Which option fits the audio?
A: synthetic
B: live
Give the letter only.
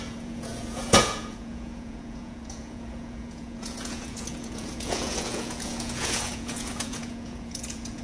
A